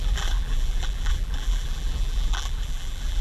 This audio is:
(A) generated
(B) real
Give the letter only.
A